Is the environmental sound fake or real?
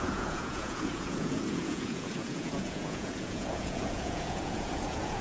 fake